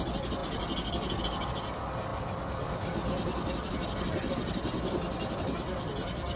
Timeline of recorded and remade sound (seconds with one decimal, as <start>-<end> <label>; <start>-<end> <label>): 0.0-6.4 recorded